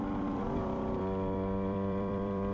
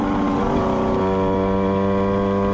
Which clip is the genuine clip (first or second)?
second